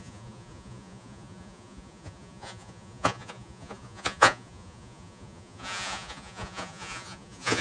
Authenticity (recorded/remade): remade